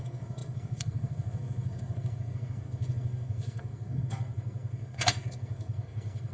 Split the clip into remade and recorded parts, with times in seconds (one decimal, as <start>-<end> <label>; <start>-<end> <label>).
0.0-6.3 remade